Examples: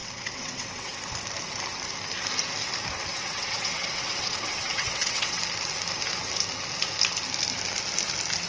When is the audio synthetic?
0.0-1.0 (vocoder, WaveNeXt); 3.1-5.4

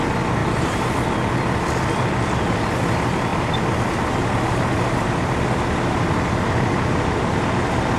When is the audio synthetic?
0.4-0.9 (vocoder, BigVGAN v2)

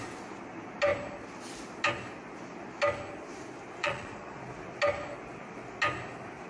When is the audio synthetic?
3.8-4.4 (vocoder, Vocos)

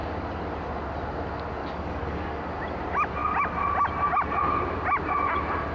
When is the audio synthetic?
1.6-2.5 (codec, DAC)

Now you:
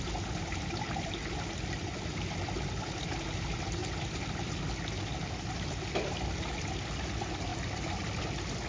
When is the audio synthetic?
none

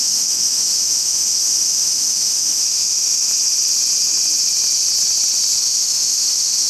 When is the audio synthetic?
0.0-3.3 (autoencoder, DAC-VAE); 5.6-6.7